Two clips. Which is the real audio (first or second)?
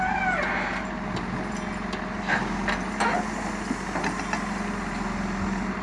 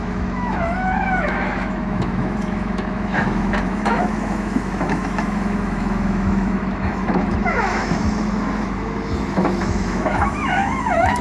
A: first